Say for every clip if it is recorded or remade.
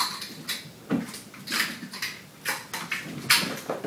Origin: recorded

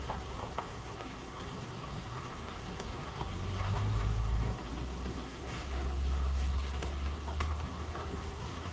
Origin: remade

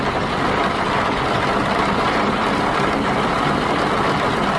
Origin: recorded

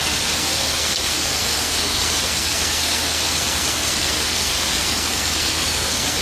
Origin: remade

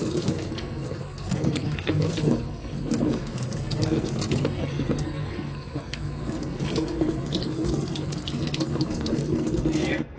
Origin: remade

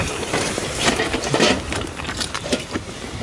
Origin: remade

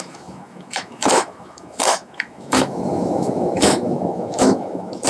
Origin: remade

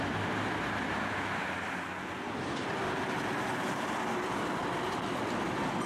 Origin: recorded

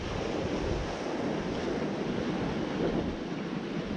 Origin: recorded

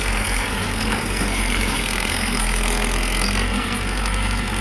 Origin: remade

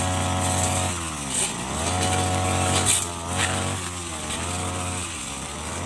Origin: recorded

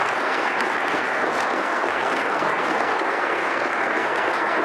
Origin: remade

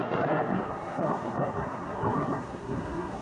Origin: remade